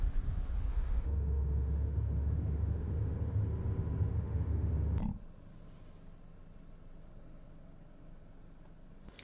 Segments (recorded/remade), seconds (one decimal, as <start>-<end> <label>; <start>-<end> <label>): 0.0-0.7 recorded; 0.7-2.9 remade; 2.9-4.1 recorded; 4.1-4.7 remade; 4.7-9.2 recorded